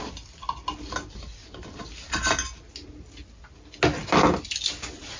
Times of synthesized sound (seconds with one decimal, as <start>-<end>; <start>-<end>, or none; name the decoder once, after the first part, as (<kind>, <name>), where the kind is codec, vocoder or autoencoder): none